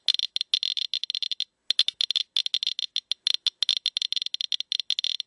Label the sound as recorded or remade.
recorded